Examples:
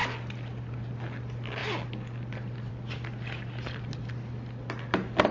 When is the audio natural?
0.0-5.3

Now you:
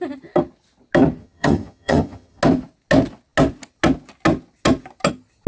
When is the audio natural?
0.0-1.2; 2.4-5.5

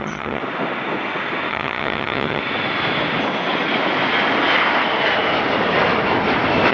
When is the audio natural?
0.4-1.5; 2.4-6.7

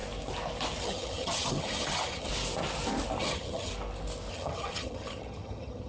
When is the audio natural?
0.0-0.8; 2.3-3.2; 3.7-4.3